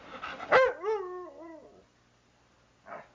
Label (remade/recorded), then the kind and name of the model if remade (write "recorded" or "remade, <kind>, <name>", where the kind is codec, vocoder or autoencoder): recorded